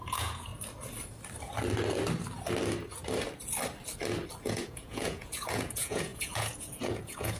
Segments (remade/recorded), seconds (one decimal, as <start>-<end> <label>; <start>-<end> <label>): 0.0-0.5 remade; 0.5-4.4 recorded; 4.4-7.4 remade